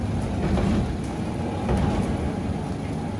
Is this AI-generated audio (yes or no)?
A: no